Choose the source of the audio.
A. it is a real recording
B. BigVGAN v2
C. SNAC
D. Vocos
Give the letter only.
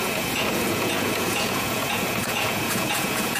D